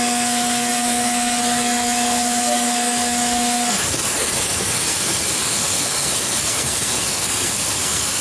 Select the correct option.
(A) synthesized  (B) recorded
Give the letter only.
A